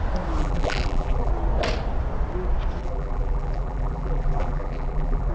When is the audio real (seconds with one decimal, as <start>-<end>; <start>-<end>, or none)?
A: 0.0-0.4; 1.3-2.8